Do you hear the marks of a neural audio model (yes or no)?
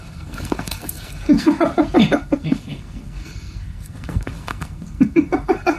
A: yes